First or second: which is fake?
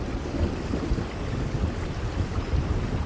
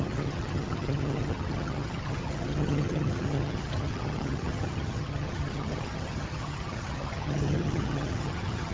second